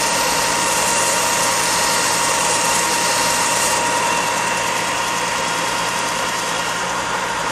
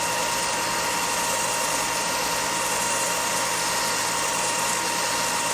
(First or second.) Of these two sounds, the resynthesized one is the first